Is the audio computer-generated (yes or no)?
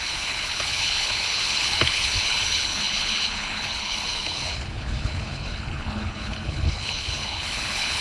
yes